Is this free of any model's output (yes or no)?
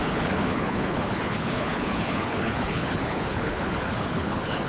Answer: no